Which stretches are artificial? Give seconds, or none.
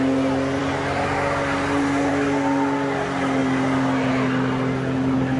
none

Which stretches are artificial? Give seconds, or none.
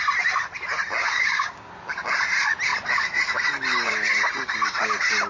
1.0-1.7